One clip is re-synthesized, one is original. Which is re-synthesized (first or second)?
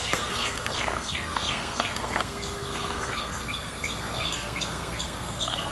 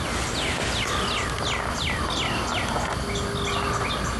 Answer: first